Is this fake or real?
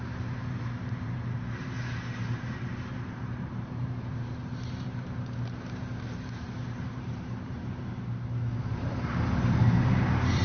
fake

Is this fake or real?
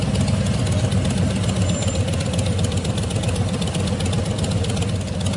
real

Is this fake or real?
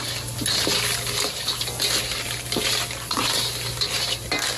real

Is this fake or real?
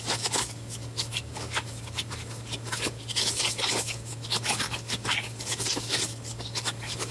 fake